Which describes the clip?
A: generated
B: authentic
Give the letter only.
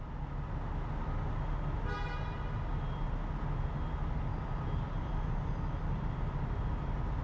B